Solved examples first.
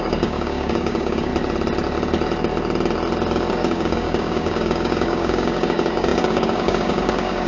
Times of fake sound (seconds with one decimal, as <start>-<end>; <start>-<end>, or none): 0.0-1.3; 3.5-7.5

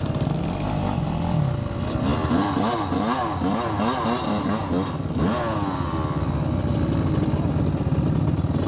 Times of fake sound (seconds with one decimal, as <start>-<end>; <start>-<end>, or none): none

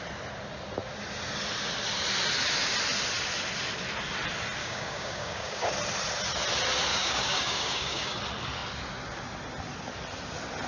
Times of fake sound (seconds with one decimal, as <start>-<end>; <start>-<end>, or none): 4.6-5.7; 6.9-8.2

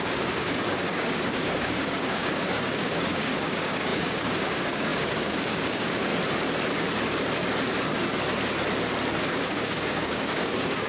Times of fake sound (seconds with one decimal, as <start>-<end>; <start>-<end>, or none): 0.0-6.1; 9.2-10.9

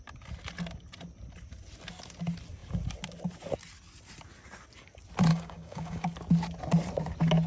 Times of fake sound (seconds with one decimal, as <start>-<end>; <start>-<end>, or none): 5.3-6.1

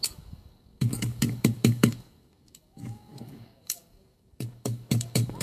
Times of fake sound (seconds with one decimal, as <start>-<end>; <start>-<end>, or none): 0.0-5.4

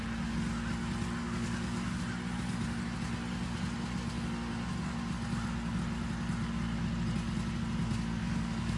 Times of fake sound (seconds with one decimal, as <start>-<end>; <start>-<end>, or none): 1.2-2.0; 8.2-8.8